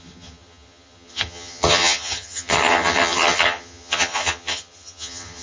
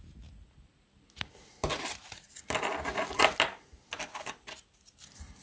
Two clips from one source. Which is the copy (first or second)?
first